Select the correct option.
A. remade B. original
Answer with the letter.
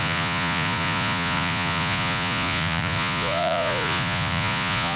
A